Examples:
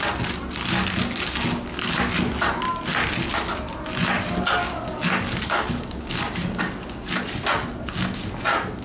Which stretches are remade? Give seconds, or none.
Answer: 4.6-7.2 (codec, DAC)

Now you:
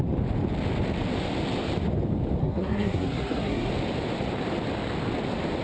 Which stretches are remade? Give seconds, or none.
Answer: 2.4-3.7 (codec, SNAC)

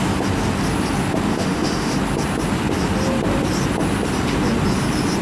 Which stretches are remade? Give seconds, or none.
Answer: 1.3-2.0 (autoencoder, DAC-VAE)

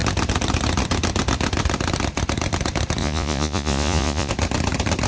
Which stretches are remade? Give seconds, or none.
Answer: 3.0-4.3 (vocoder, Vocos)

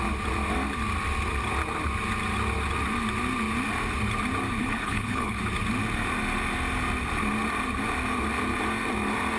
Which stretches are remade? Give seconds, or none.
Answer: 4.6-5.4 (codec, HILCodec)

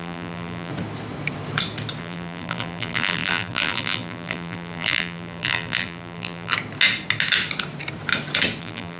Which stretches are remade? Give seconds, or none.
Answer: 0.0-0.7 (vocoder, BigVGAN v2); 2.0-6.5; 8.6-9.0

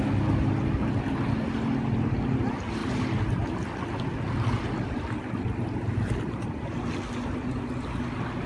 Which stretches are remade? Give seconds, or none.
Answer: none

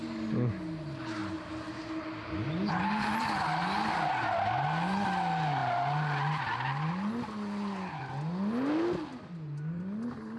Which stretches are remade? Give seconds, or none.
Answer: none